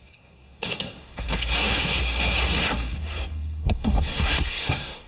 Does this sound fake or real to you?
fake